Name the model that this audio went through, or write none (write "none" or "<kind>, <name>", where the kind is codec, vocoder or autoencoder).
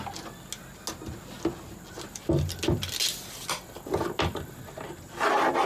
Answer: none